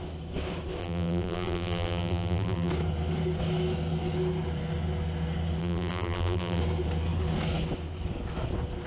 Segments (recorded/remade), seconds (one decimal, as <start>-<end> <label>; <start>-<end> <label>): 0.0-0.8 recorded; 0.8-2.7 remade; 2.7-5.6 recorded; 5.6-6.6 remade; 6.6-8.9 recorded